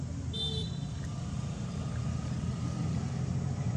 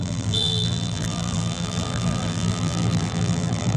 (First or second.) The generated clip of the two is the second